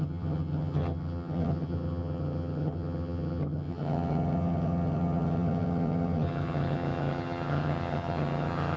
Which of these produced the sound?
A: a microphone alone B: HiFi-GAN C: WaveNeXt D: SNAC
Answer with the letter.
B